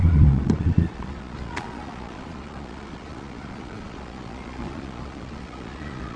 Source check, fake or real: fake